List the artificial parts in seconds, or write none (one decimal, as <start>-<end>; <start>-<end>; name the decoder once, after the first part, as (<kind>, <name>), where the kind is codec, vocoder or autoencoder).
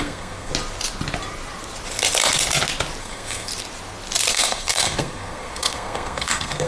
0.0-0.5 (codec, SNAC); 3.0-3.5; 4.3-6.7